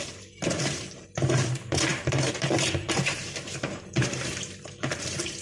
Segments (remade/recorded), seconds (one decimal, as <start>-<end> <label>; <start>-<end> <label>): 0.0-5.4 remade